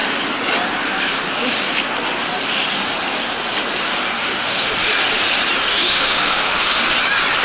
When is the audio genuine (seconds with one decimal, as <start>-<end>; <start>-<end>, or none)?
0.0-4.2; 4.7-5.7; 6.8-7.4